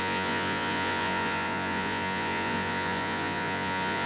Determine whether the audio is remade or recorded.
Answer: remade